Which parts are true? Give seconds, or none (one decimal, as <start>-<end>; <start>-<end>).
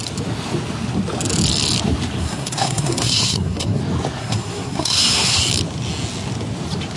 0.0-2.2; 3.8-4.2; 5.5-7.0